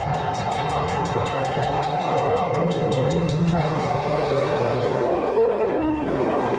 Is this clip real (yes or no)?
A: no